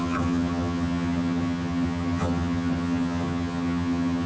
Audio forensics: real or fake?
fake